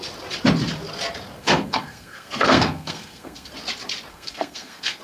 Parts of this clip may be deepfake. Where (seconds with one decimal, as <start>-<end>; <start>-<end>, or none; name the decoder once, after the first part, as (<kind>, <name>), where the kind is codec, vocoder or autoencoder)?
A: 1.4-3.5 (codec, SNAC); 4.1-5.0